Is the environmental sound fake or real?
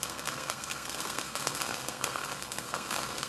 fake